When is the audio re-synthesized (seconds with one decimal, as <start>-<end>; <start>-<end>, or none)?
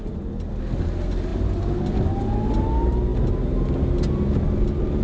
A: none